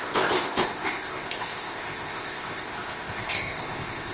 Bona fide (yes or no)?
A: no